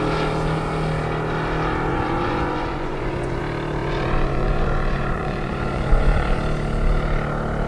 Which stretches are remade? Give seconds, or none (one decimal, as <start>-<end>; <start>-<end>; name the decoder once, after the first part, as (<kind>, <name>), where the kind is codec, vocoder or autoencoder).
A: 1.9-3.4 (vocoder, Vocos); 3.8-6.4